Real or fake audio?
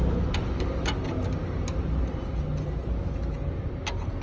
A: real